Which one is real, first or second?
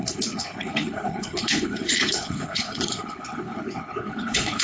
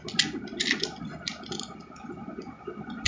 second